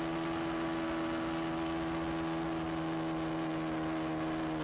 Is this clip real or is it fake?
real